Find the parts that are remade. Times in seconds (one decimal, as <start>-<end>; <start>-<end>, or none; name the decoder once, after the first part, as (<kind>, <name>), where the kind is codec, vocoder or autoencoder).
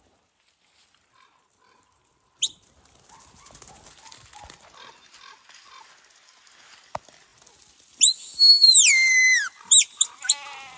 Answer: none